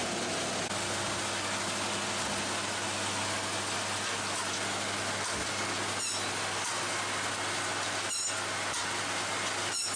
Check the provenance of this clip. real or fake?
real